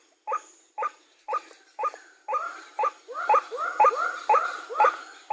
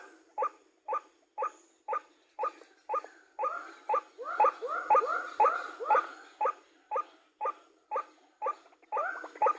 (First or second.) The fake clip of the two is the first